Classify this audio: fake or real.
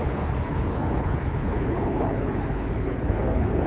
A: fake